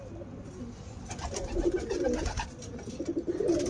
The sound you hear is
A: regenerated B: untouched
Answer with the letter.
B